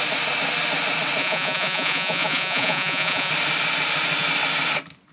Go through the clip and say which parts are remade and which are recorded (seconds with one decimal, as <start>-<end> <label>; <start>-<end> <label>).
0.0-1.2 recorded; 1.2-3.3 remade; 3.3-5.1 recorded